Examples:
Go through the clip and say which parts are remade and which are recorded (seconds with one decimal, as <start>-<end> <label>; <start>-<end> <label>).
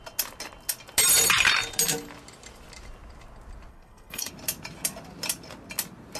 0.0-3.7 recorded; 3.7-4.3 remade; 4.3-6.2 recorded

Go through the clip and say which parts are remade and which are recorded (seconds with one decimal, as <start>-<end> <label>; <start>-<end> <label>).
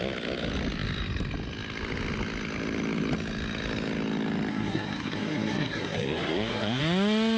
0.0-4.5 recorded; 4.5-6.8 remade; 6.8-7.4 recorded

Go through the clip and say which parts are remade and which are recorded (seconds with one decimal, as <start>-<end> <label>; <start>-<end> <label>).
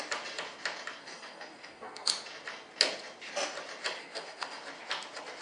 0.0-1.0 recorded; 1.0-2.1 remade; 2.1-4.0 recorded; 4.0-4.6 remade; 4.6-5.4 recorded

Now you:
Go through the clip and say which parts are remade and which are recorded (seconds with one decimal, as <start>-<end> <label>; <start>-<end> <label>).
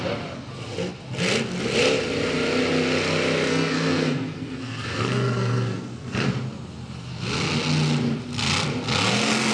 0.0-3.5 recorded; 3.5-6.3 remade; 6.3-9.5 recorded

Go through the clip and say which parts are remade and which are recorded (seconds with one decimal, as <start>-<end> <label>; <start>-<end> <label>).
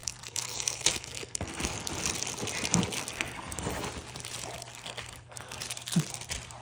0.0-1.9 remade; 1.9-3.0 recorded; 3.0-3.7 remade; 3.7-4.7 recorded; 4.7-5.6 remade; 5.6-6.6 recorded